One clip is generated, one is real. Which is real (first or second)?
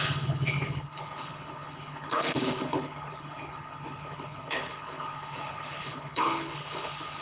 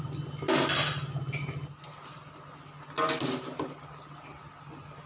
second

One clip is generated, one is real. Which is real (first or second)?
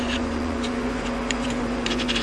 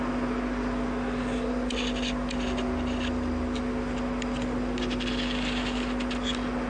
second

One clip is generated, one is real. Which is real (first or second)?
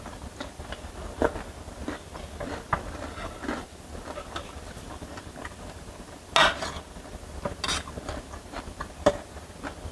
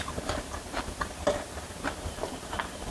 first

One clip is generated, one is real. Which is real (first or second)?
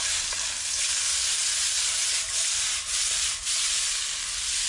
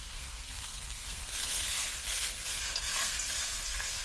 first